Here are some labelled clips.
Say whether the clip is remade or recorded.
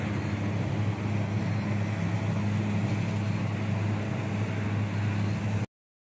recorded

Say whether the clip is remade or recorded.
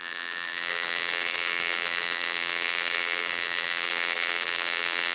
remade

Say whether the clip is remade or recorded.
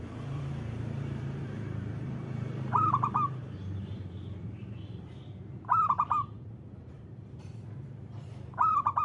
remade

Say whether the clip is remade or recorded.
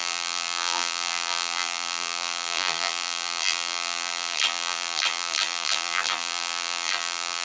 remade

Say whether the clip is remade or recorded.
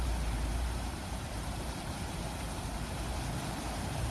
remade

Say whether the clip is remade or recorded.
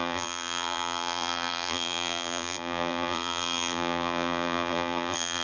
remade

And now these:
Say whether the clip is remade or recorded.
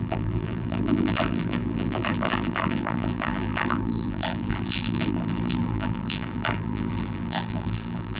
remade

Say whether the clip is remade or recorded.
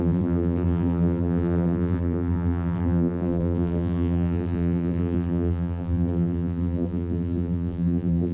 remade